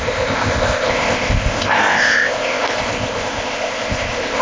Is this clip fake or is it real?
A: fake